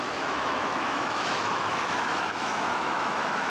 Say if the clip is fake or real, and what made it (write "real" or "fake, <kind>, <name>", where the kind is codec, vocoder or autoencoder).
fake, autoencoder, DAC-VAE